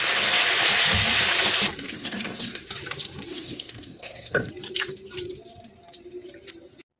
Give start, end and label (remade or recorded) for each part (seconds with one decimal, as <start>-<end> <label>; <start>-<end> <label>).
0.0-1.9 recorded; 1.9-2.6 remade; 2.6-3.3 recorded; 3.3-4.5 remade; 4.5-7.0 recorded